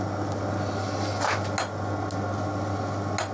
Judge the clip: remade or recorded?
recorded